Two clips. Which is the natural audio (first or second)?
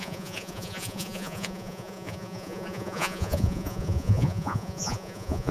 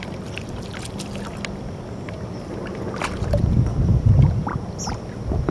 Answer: second